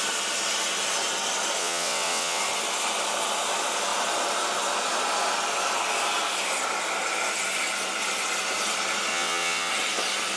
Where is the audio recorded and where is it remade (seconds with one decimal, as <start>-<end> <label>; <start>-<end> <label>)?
0.0-1.6 recorded; 1.6-2.4 remade; 2.4-9.1 recorded; 9.1-9.7 remade; 9.7-10.4 recorded